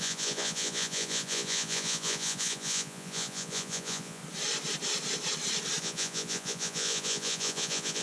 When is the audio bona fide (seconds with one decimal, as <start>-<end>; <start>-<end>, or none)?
4.2-5.8